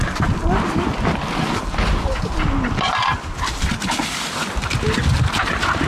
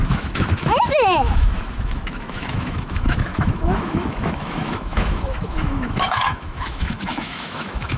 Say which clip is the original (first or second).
first